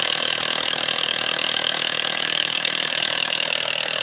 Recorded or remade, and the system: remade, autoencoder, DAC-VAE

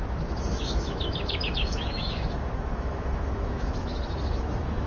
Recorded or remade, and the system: remade, autoencoder, DAC-VAE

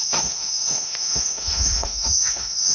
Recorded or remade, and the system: remade, autoencoder, DAC-VAE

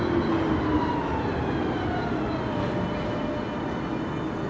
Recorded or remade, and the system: recorded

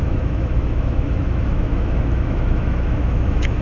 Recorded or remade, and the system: remade, autoencoder, DAC-VAE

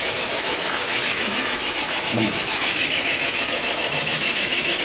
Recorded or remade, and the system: remade, autoencoder, DAC-VAE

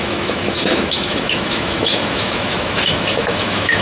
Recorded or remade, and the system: remade, autoencoder, DAC-VAE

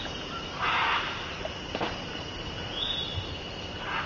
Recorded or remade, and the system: recorded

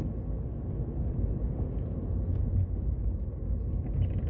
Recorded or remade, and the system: recorded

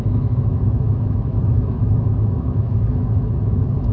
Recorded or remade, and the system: remade, autoencoder, DAC-VAE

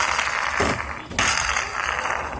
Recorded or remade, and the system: recorded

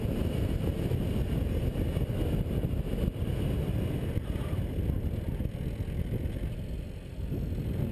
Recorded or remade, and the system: recorded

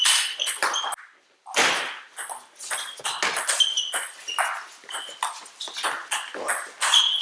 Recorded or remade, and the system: recorded